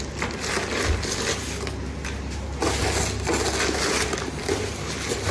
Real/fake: real